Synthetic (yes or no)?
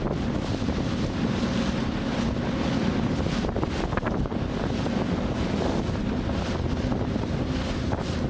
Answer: no